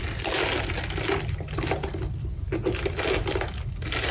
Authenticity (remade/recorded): recorded